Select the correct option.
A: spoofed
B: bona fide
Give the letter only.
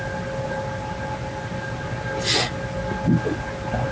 B